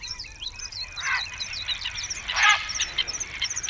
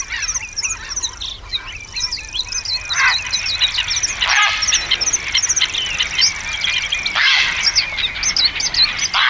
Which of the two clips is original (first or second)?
second